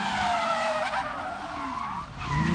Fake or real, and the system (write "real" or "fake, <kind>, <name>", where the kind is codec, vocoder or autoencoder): real